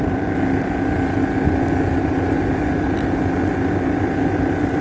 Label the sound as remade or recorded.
recorded